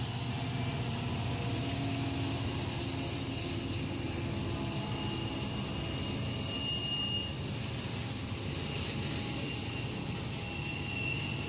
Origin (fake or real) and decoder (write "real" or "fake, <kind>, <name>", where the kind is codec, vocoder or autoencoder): real